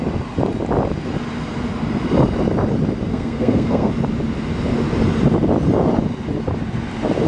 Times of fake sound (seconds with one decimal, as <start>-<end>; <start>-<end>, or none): 3.1-3.9